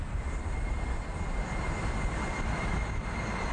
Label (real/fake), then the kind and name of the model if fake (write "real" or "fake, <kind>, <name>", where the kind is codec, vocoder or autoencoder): fake, vocoder, BigVGAN v2